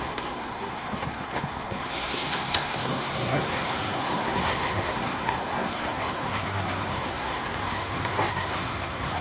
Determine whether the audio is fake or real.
fake